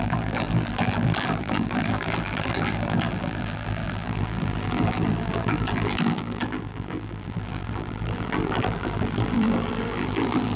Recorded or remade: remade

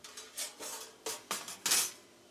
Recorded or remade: recorded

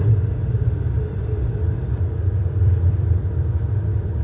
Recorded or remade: remade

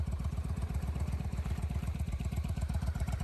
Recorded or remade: remade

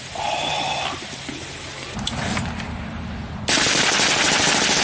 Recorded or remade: recorded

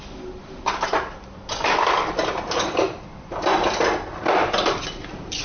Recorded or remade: remade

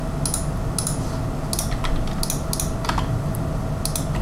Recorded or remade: recorded